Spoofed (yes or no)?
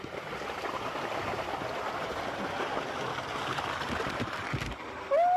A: no